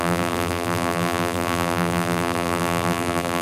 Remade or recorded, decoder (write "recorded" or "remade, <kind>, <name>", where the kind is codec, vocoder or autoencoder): remade, vocoder, BigVGAN v2